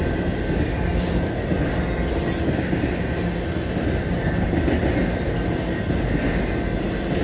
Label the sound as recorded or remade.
recorded